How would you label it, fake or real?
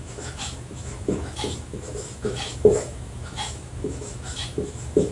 fake